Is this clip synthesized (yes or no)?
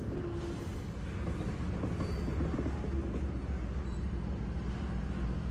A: no